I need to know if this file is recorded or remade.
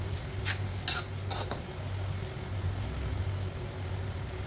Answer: recorded